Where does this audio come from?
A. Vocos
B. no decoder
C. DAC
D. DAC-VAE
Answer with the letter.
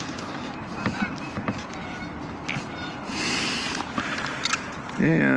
B